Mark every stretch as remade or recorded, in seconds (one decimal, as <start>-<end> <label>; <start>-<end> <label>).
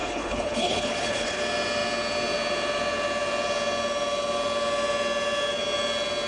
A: 0.0-1.4 remade; 1.4-6.3 recorded